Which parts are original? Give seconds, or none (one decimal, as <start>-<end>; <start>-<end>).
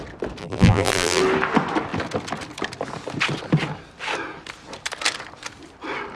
0.0-0.4; 1.2-6.2